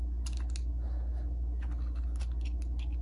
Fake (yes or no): no